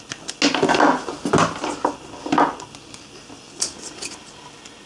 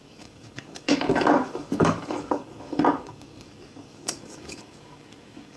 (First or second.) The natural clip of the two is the first